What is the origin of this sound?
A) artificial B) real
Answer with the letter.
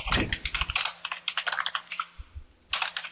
B